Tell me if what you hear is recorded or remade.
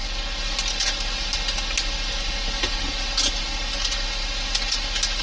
recorded